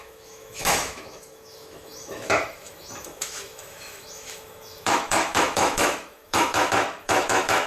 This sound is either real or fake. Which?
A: fake